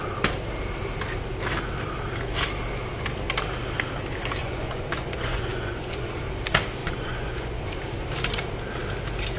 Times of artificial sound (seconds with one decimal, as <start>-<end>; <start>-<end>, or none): 4.4-6.2; 6.8-7.6